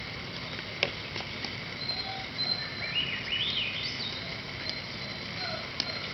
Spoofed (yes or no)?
no